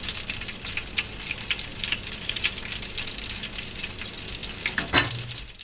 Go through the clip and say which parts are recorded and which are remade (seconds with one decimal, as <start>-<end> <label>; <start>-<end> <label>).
0.0-1.7 recorded; 1.7-2.6 remade; 2.6-5.6 recorded